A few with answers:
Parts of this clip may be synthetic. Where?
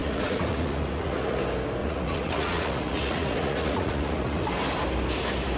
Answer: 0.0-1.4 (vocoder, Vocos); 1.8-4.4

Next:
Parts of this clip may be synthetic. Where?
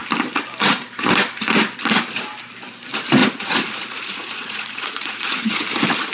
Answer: 3.2-5.5 (vocoder, Vocos)